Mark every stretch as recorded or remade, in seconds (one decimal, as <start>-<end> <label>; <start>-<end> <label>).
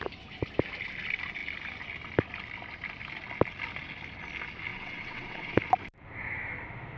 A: 0.0-4.7 recorded; 4.7-5.6 remade; 5.6-7.0 recorded